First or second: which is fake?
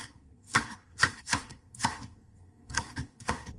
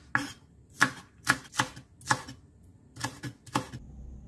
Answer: first